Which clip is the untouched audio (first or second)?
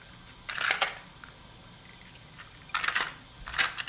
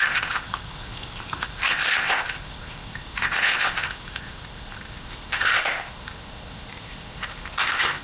first